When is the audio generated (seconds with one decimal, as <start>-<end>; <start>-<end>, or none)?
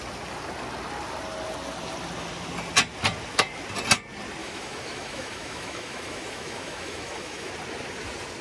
4.4-7.5